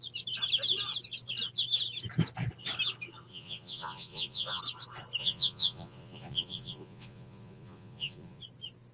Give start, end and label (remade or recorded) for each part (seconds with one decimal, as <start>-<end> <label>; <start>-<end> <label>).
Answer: 0.0-3.3 recorded; 3.3-4.6 remade; 4.6-5.2 recorded; 5.2-8.4 remade; 8.4-8.9 recorded